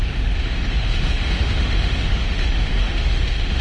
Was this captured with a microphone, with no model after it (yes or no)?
no